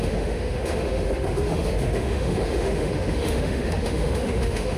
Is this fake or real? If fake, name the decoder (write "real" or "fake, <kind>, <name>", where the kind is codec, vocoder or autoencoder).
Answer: fake, autoencoder, DAC-VAE